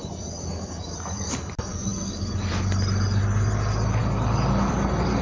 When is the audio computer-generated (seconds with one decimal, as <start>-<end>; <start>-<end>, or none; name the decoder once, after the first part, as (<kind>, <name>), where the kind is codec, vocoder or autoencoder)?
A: none